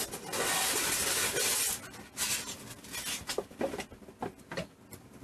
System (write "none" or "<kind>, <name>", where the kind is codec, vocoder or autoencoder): none